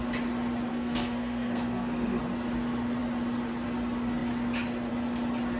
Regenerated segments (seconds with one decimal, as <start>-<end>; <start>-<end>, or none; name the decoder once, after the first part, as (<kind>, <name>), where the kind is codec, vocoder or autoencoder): 0.7-2.2 (codec, SNAC)